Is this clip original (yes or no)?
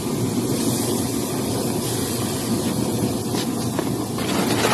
yes